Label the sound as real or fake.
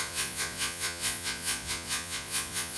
fake